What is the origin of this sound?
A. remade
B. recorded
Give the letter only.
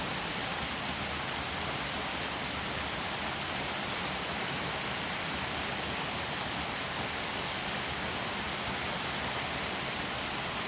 B